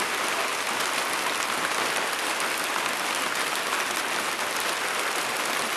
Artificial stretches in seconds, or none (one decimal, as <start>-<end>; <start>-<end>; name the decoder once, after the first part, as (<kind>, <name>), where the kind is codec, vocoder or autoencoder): none